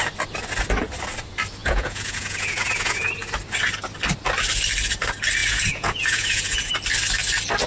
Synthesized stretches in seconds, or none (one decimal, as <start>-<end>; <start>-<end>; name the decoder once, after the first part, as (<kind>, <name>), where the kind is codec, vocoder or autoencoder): 1.6-3.1 (vocoder, Vocos); 5.4-6.7